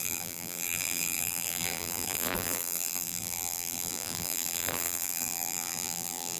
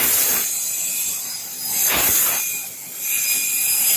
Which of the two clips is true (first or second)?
second